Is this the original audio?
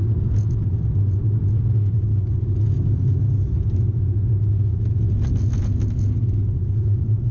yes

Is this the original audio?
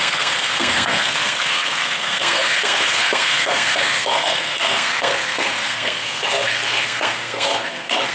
no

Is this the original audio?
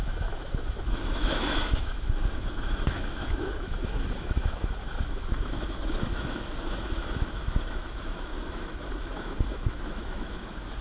no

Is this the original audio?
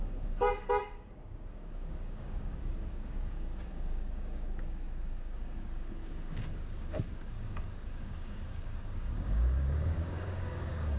no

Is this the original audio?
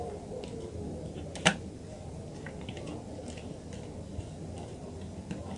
yes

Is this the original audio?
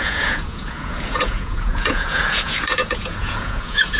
no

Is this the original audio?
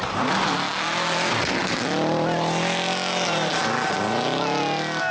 yes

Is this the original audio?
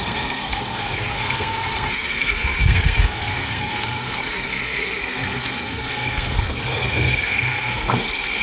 no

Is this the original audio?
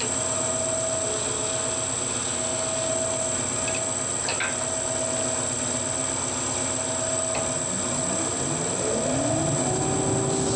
yes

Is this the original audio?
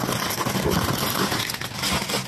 yes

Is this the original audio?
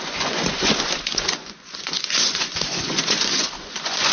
no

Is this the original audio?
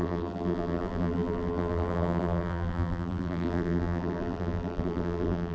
no